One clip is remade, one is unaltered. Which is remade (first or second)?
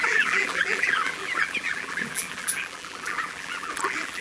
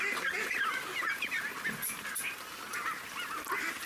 first